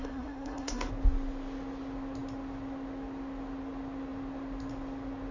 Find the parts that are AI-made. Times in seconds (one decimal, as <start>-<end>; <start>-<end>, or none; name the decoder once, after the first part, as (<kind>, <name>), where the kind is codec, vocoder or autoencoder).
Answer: 0.0-0.9 (codec, SNAC)